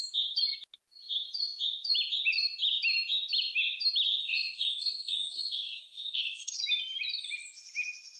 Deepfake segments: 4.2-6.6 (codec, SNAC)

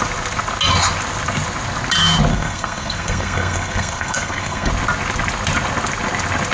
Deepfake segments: 2.3-4.7 (codec, SNAC)

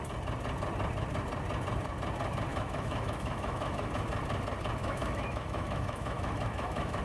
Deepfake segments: 2.5-3.9 (autoencoder, DAC-VAE); 4.8-7.0

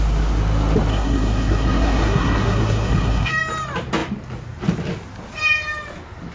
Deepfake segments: 0.9-3.3 (codec, SNAC)